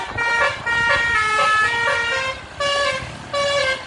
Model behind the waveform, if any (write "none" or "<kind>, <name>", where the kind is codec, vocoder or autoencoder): none